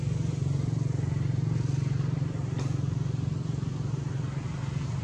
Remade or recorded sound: recorded